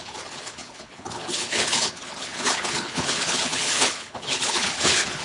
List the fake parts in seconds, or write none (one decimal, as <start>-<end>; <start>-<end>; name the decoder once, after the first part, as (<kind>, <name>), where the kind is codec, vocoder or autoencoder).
0.0-5.2 (codec, HILCodec)